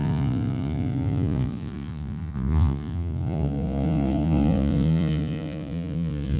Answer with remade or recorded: remade